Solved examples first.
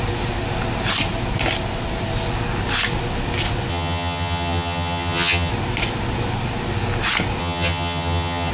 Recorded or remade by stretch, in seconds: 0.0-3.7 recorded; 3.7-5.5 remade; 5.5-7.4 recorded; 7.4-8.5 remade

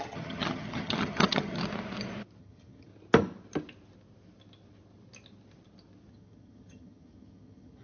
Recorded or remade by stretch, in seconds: 0.0-1.6 remade; 1.6-2.4 recorded; 2.4-2.9 remade; 2.9-6.1 recorded; 6.1-7.8 remade